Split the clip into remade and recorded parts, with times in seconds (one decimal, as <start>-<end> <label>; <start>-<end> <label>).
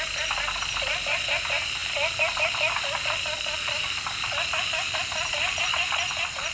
0.0-6.5 recorded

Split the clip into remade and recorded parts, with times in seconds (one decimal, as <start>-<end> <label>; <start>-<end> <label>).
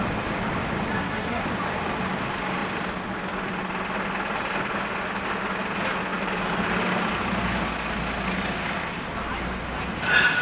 0.0-0.9 recorded; 0.9-1.4 remade; 1.4-10.4 recorded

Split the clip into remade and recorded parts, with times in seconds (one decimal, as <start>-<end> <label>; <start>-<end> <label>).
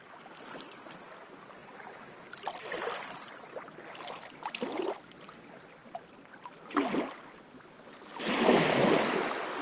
0.0-9.6 recorded